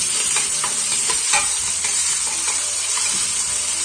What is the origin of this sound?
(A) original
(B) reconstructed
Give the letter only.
B